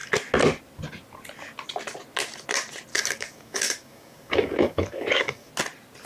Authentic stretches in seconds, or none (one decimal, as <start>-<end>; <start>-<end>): 0.0-2.9; 5.5-6.1